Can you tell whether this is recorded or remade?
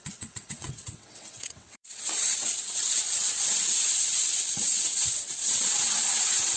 remade